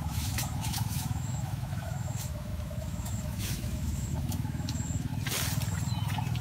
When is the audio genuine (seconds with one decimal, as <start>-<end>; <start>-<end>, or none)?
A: 5.1-6.4